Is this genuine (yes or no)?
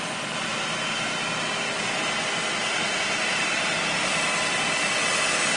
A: yes